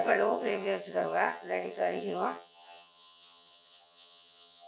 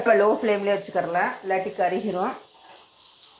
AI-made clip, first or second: first